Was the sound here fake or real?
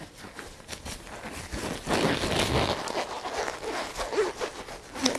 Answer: real